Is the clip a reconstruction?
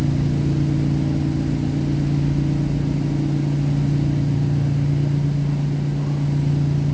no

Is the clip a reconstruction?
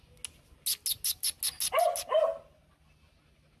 no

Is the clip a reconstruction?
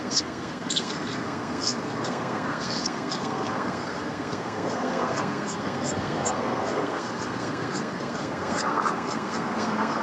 yes